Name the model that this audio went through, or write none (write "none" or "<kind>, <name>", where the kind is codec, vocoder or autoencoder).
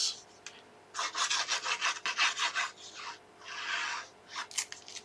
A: none